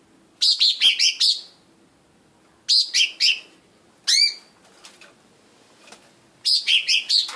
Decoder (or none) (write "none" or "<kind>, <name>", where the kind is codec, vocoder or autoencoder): none